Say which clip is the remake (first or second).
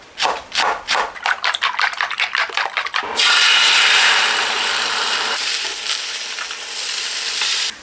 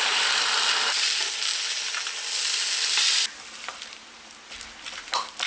first